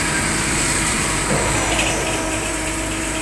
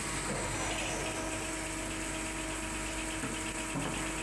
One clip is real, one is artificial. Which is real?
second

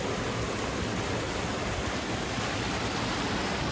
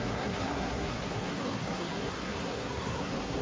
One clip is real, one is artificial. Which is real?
first